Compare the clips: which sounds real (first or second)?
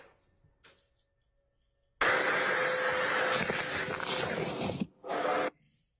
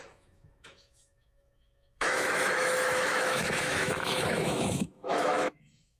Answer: first